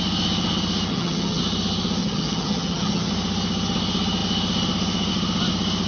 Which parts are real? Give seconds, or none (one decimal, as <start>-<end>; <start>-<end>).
0.0-0.9; 1.4-2.0; 3.1-5.9